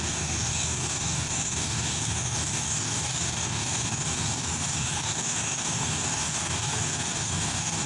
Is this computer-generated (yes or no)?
yes